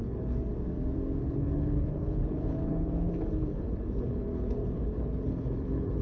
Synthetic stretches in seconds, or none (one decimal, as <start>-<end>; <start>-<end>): 0.0-0.5; 1.2-6.0